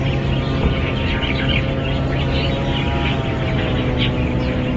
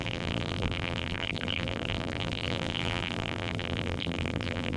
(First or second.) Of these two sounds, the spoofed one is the second